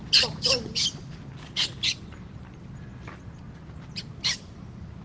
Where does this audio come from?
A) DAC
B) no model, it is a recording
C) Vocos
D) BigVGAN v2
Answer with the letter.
B